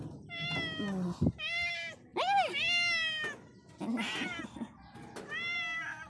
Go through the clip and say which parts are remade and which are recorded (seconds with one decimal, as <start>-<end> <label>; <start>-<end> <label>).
0.0-6.1 recorded